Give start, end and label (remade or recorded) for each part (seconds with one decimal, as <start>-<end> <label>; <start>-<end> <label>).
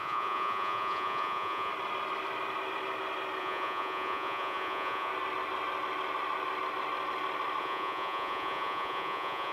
0.0-1.7 remade; 1.7-3.4 recorded; 3.4-5.1 remade; 5.1-7.6 recorded; 7.6-9.5 remade